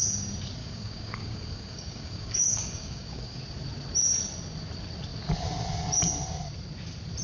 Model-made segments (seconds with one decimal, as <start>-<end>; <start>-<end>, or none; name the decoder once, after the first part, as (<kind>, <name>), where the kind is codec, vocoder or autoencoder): 0.6-3.4 (codec, DAC)